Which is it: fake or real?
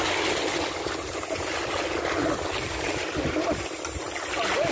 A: real